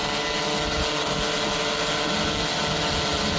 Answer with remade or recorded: recorded